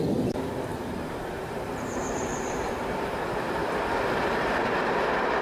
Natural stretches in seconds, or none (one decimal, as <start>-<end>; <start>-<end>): 0.0-0.7; 3.9-5.4